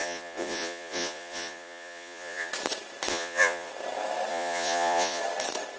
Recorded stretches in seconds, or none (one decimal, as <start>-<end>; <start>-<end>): 2.5-3.1; 3.7-4.3; 5.2-5.8